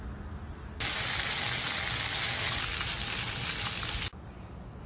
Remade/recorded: recorded